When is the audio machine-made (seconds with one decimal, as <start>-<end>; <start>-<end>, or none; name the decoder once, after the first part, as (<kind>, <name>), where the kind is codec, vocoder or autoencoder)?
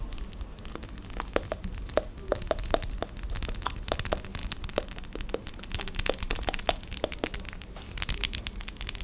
none